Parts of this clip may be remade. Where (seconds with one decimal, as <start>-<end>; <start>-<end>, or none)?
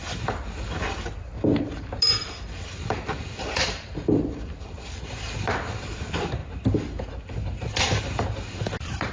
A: none